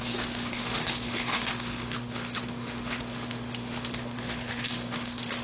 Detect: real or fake fake